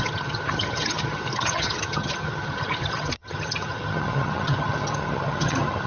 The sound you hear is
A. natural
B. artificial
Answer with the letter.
B